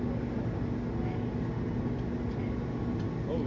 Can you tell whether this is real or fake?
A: real